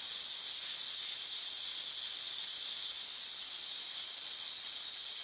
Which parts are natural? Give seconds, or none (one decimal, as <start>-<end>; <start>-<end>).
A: 0.0-5.2